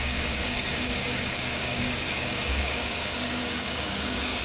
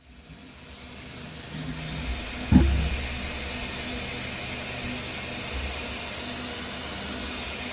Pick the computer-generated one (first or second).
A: first